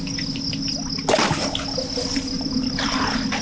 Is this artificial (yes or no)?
no